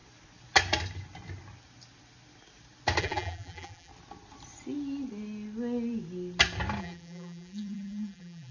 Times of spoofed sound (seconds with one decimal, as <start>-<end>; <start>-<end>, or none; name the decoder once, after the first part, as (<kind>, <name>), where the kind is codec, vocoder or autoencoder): 3.0-3.9 (vocoder, BigVGAN v2); 6.8-8.5